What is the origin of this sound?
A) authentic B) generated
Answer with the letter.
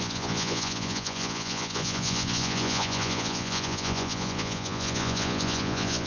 B